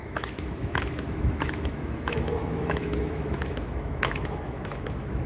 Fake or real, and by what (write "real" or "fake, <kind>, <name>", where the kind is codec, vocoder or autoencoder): fake, autoencoder, DAC-VAE